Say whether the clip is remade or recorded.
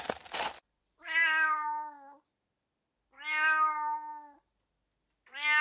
recorded